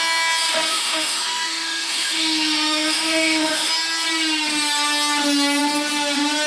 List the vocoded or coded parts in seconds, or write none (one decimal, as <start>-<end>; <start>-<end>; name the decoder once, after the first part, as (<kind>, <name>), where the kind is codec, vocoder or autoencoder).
0.7-3.7 (autoencoder, DAC-VAE)